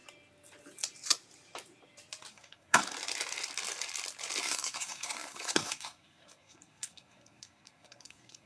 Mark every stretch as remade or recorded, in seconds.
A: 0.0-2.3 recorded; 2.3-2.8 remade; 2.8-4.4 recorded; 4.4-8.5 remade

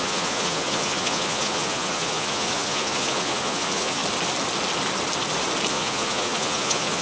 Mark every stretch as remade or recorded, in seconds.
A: 0.0-4.0 remade; 4.0-5.7 recorded; 5.7-7.0 remade

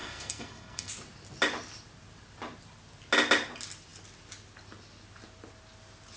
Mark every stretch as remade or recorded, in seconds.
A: 0.0-0.9 remade; 0.9-6.2 recorded

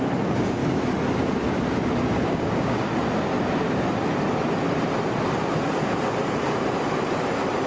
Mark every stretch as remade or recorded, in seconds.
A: 0.0-0.6 remade; 0.6-2.3 recorded; 2.3-2.9 remade; 2.9-7.7 recorded

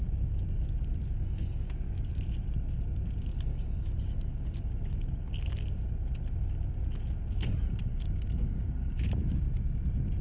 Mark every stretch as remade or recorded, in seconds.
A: 0.0-1.4 recorded; 1.4-2.1 remade; 2.1-3.5 recorded; 3.5-4.3 remade; 4.3-7.9 recorded; 7.9-9.4 remade; 9.4-10.2 recorded

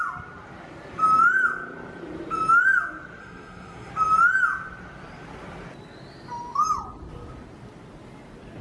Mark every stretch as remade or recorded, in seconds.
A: 0.0-3.2 recorded; 3.2-3.9 remade; 3.9-8.6 recorded

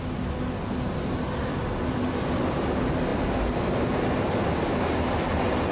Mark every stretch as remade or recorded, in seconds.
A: 0.0-5.7 recorded

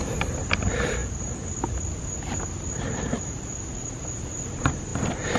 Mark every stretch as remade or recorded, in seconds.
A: 0.0-5.4 recorded